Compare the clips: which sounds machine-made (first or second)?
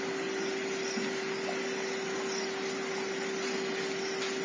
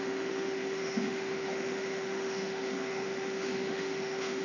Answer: second